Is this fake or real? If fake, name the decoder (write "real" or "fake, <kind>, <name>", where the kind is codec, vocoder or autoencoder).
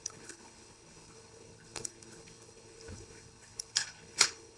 fake, codec, HILCodec